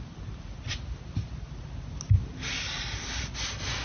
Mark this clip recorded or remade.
recorded